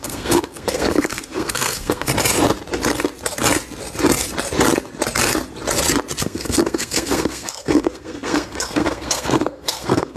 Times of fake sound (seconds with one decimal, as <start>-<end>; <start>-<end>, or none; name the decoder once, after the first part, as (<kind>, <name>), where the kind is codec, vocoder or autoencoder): 0.0-2.1 (codec, SNAC); 6.2-10.2